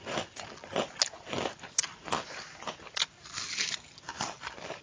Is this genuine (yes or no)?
yes